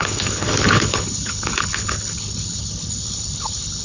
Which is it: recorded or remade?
remade